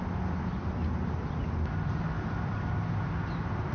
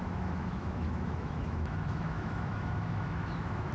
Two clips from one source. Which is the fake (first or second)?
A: second